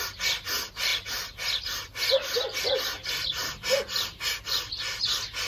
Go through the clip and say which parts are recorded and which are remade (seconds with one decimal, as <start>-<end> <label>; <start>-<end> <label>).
0.0-5.5 recorded